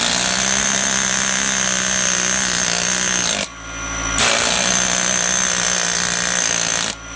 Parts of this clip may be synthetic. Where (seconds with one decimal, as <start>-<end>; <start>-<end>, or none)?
none